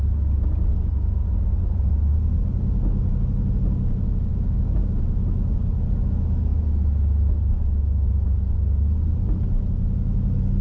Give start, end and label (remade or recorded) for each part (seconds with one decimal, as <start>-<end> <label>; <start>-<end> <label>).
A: 0.0-10.6 recorded